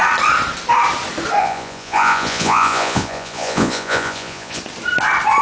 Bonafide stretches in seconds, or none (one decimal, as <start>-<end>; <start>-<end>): 0.0-1.4; 4.6-5.4